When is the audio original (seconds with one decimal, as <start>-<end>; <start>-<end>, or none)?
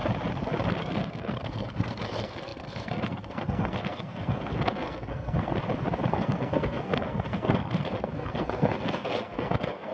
0.0-0.8; 5.5-6.1